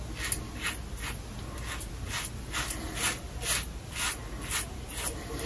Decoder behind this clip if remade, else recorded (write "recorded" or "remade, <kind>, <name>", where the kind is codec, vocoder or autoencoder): recorded